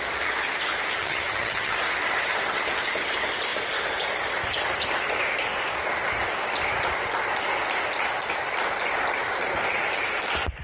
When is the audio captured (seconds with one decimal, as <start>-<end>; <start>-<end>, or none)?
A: 0.0-1.0; 1.8-10.6